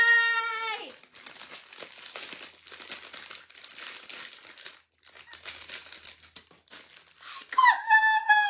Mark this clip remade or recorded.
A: recorded